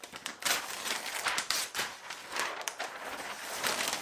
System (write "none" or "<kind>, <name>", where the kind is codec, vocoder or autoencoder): none